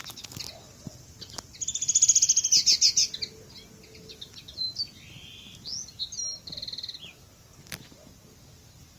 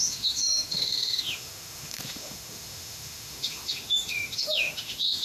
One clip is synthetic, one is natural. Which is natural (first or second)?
first